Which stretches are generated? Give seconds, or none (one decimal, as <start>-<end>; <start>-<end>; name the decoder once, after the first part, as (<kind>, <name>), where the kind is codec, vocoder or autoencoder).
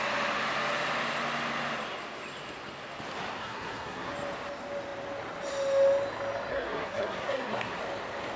3.4-4.1 (codec, SNAC); 6.5-7.8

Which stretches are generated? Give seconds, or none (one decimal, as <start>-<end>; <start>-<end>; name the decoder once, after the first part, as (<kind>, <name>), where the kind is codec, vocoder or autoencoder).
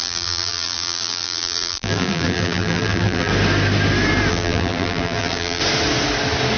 0.0-3.3 (vocoder, BigVGAN v2); 4.3-5.6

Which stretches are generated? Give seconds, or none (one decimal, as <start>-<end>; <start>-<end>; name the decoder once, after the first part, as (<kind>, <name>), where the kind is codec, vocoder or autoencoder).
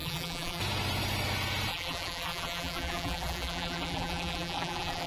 0.0-0.6 (vocoder, BigVGAN v2); 1.7-5.1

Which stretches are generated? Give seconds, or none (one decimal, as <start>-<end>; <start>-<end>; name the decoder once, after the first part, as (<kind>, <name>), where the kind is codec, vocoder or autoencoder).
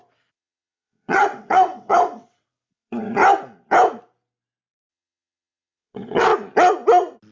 0.0-3.2 (vocoder, WaveNeXt); 4.9-6.3